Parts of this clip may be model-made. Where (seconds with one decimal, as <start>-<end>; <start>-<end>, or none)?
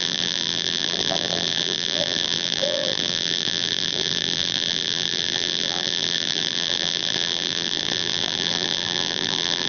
0.0-9.7